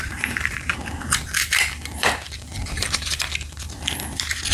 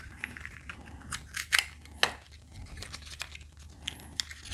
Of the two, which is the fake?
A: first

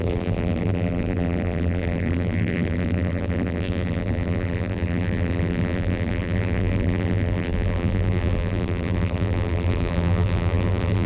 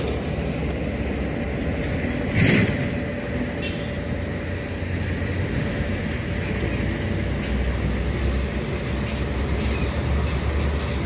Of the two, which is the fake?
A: first